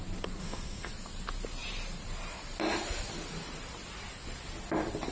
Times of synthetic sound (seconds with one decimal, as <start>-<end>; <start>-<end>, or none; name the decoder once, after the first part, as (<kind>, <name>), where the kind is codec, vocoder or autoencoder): 0.4-0.9 (autoencoder, DAC-VAE)